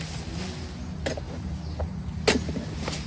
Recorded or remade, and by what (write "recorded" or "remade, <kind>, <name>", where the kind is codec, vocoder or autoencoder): recorded